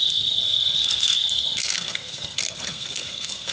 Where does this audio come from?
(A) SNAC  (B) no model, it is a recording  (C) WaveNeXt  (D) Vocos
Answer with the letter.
A